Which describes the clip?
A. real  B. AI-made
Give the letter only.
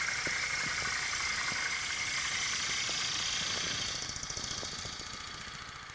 A